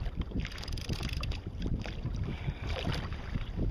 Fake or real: fake